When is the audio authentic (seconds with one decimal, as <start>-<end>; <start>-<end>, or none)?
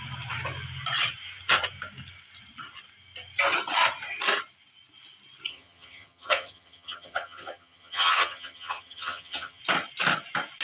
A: 0.0-5.5; 9.6-10.6